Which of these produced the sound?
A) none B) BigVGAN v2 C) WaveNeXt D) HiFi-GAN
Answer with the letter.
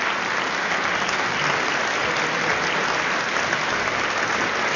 A